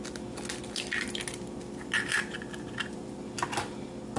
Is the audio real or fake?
real